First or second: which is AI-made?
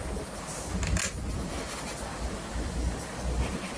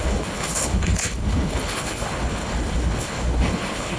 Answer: second